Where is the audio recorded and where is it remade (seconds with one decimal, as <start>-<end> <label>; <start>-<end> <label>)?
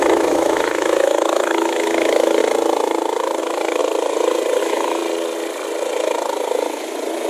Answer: 0.0-2.4 remade; 2.4-3.4 recorded; 3.4-3.8 remade; 3.8-4.6 recorded; 4.6-5.0 remade; 5.0-7.3 recorded